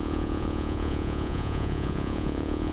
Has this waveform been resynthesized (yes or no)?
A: yes